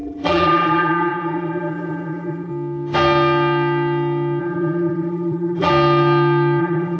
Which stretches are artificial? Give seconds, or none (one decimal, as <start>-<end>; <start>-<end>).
0.0-2.5; 4.4-5.7; 6.6-7.0